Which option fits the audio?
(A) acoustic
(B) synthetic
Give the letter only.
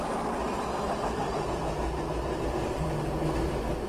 A